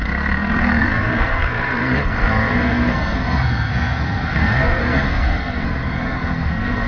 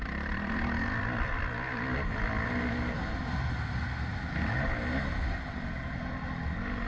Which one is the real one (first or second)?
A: second